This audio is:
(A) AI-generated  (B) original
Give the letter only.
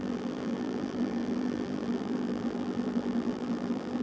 A